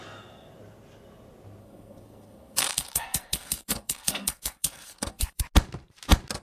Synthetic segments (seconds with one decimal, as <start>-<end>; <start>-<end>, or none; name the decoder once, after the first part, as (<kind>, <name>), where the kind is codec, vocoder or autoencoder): 1.6-5.4 (codec, SNAC)